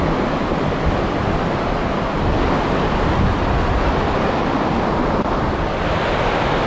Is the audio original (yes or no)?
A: yes